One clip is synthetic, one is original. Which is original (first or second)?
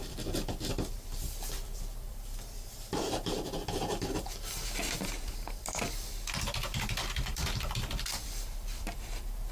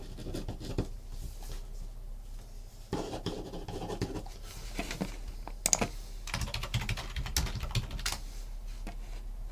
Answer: second